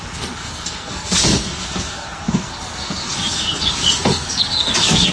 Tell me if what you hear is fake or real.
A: fake